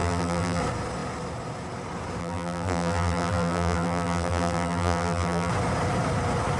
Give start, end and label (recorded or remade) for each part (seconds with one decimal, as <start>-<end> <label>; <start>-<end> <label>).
0.0-0.6 remade; 0.6-2.2 recorded; 2.2-5.5 remade; 5.5-6.6 recorded